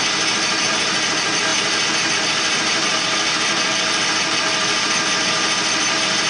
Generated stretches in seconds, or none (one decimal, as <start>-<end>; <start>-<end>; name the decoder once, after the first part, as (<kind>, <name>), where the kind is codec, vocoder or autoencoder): 0.0-1.5 (vocoder, BigVGAN v2); 2.1-6.3